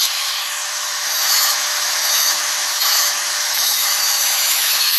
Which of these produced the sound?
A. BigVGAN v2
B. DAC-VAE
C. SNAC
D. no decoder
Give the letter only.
B